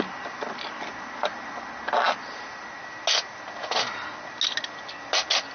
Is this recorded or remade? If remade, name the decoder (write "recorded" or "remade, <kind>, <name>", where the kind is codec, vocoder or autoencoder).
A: recorded